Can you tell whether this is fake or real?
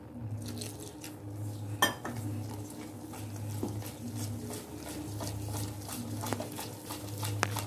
real